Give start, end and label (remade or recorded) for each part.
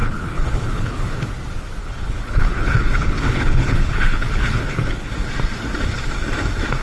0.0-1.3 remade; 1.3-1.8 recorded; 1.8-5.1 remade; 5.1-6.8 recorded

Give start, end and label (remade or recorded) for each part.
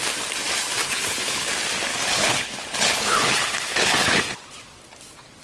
0.0-0.8 recorded; 0.8-1.5 remade; 1.5-1.9 recorded; 1.9-4.2 remade; 4.2-5.4 recorded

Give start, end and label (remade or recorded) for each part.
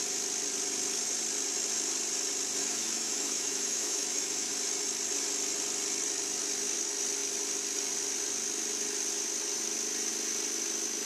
0.0-2.6 recorded; 2.6-4.5 remade; 4.5-11.1 recorded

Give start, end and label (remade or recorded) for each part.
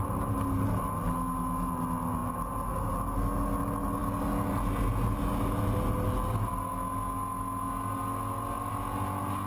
0.0-9.5 recorded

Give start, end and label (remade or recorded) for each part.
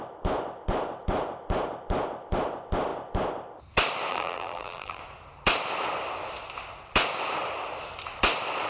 0.0-4.1 recorded; 4.1-5.0 remade; 5.0-8.7 recorded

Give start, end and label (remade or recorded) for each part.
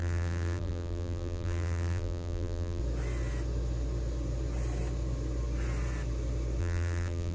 0.0-2.8 remade; 2.8-6.6 recorded; 6.6-7.3 remade